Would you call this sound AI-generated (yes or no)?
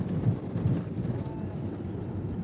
no